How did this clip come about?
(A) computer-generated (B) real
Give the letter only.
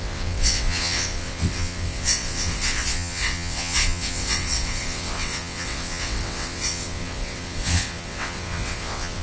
A